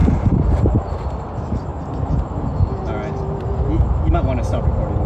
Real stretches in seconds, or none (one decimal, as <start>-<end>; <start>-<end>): 0.6-5.1